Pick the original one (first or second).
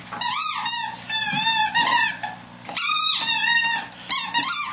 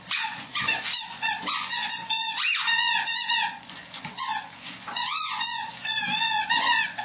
first